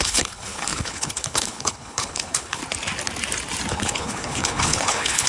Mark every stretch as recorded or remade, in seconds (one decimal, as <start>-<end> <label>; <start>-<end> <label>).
0.0-2.6 remade; 2.6-3.7 recorded; 3.7-5.3 remade